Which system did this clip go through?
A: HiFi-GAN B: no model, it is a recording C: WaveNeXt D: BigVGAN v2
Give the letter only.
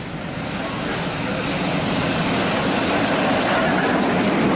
B